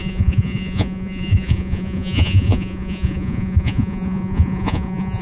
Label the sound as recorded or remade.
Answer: remade